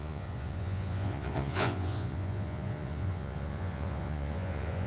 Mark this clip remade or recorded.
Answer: remade